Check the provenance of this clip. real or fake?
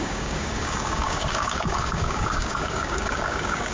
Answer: fake